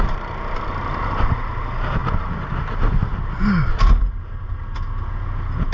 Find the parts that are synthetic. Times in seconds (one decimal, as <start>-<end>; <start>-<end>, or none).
none